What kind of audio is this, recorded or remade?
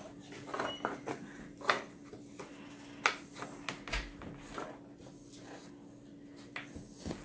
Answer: recorded